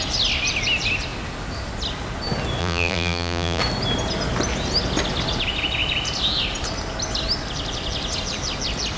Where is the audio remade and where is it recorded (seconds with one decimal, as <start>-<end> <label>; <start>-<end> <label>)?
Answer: 0.0-2.6 recorded; 2.6-3.6 remade; 3.6-9.0 recorded